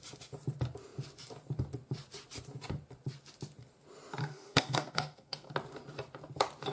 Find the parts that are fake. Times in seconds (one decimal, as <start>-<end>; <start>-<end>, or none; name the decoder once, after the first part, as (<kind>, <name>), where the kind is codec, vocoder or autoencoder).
4.2-5.5 (codec, SNAC)

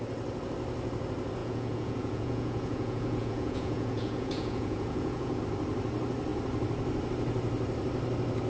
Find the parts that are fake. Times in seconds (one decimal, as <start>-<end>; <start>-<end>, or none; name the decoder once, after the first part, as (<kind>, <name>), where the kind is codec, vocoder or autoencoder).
1.4-5.4 (vocoder, Vocos)

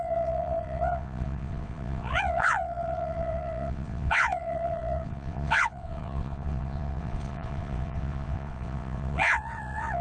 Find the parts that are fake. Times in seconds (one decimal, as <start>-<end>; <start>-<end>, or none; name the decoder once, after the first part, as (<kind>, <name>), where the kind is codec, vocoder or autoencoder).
0.0-10.0 (vocoder, WaveNeXt)